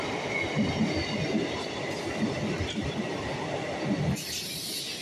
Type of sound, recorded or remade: recorded